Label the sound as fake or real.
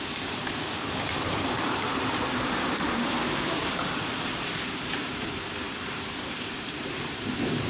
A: fake